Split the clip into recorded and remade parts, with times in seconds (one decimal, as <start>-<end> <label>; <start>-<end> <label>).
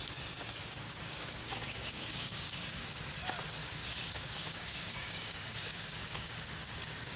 0.0-0.6 recorded; 0.6-3.0 remade; 3.0-3.6 recorded; 3.6-7.2 remade